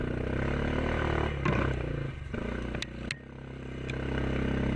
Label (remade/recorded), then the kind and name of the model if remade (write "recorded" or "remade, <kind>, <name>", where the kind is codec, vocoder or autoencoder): recorded